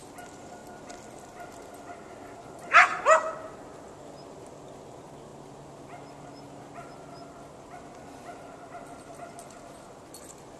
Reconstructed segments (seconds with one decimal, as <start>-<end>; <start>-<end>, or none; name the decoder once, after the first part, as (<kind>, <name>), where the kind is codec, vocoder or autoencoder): none